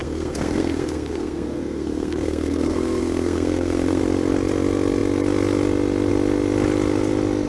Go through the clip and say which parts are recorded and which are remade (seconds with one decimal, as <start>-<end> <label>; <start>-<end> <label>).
0.0-4.0 remade; 4.0-7.5 recorded